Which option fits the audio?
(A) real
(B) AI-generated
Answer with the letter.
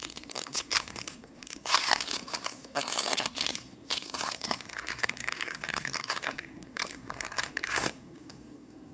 B